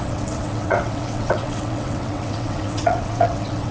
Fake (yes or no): yes